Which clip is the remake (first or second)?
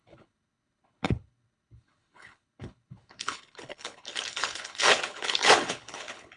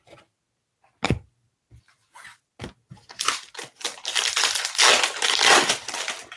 first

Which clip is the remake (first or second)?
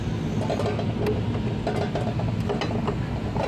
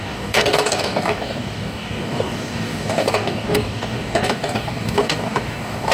second